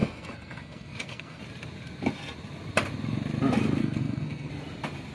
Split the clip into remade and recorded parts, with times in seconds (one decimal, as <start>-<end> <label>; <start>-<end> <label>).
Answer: 0.0-1.4 remade; 1.4-3.8 recorded; 3.8-4.5 remade; 4.5-5.1 recorded